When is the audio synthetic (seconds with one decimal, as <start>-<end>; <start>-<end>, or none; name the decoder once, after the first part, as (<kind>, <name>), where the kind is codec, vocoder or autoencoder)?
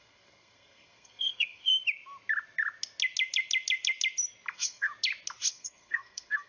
0.0-1.7 (codec, SNAC); 4.5-4.9; 5.5-6.5